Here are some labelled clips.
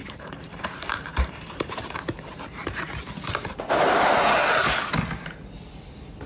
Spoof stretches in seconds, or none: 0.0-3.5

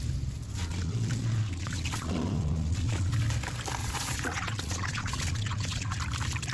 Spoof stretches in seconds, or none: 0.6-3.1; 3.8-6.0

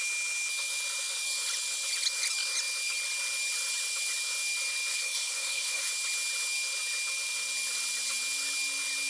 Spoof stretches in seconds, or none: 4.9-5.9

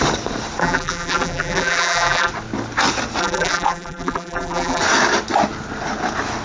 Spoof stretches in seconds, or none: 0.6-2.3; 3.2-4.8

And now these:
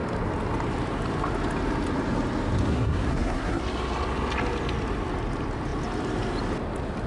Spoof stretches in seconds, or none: 2.7-3.6

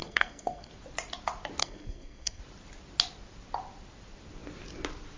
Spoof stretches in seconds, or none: 0.0-0.7; 1.6-2.4

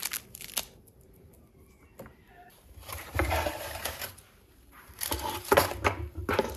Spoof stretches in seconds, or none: 2.8-6.6

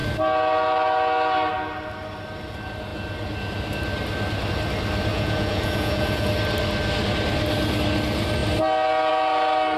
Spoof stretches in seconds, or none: 5.1-6.3